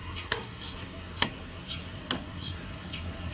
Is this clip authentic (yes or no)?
no